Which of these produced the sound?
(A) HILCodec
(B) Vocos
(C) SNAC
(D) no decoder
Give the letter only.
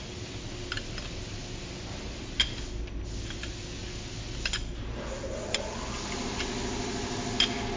D